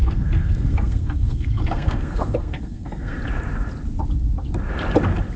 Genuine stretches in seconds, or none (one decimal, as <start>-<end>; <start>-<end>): 3.2-5.4